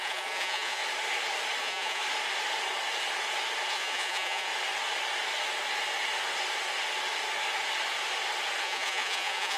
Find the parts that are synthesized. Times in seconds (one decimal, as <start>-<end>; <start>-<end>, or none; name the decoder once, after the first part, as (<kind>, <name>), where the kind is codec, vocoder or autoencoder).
0.0-0.8 (vocoder, Vocos); 1.6-2.0; 3.7-4.5; 8.6-9.6

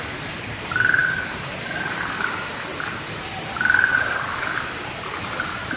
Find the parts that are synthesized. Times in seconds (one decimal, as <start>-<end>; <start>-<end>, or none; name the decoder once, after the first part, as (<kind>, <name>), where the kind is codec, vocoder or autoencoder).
none

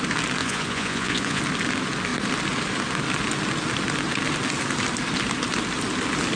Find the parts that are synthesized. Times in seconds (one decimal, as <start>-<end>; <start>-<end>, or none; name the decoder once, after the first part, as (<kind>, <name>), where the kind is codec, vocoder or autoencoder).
0.4-1.4 (vocoder, Vocos)